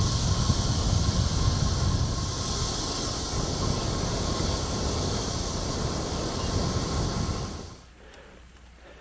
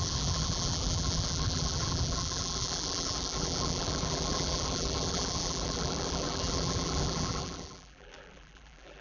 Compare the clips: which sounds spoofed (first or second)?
second